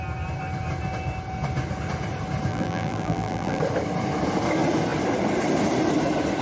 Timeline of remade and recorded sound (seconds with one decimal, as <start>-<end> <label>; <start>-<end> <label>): 0.0-2.5 recorded; 2.5-3.6 remade; 3.6-6.4 recorded